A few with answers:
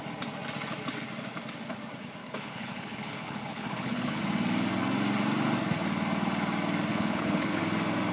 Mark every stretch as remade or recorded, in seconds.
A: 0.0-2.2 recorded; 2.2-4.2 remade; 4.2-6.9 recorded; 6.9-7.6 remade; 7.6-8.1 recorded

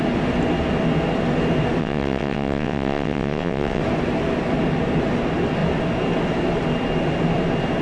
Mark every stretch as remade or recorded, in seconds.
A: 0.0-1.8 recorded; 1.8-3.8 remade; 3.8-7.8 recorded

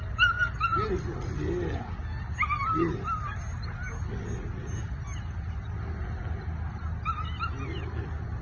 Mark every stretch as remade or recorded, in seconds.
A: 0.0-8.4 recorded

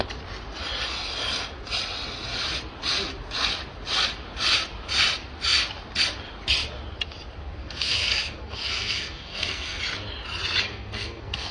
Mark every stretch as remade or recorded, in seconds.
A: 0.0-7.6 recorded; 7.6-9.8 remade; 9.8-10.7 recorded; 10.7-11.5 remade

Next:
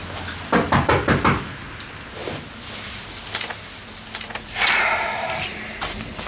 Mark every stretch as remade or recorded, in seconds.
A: 0.0-6.3 recorded